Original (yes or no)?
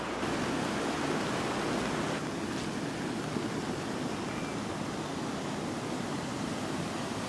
yes